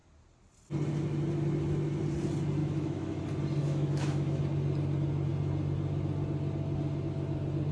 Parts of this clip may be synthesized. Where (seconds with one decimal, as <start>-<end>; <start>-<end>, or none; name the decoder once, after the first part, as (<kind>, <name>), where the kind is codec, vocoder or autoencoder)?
2.6-3.2 (autoencoder, DAC-VAE); 3.6-4.4